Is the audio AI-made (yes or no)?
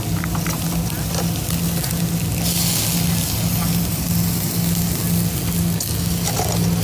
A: no